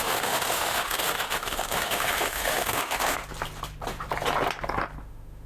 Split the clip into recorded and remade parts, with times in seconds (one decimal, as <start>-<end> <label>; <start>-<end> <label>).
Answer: 0.0-3.2 remade; 3.2-5.0 recorded; 5.0-5.5 remade